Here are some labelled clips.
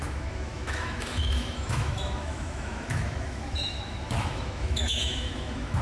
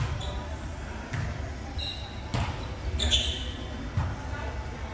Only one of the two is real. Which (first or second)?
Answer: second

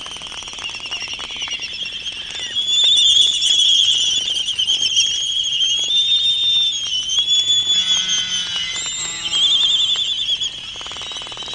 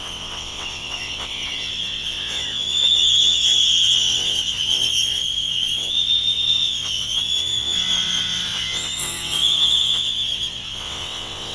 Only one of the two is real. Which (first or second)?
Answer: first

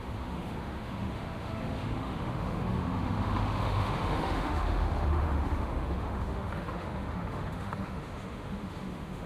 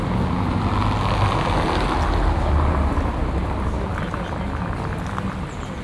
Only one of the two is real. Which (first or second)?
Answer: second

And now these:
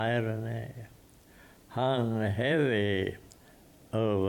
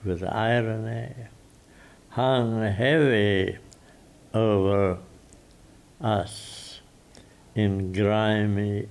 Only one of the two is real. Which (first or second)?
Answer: second